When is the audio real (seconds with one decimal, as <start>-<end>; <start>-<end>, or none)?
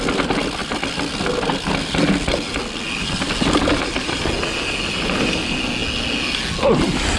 0.0-7.2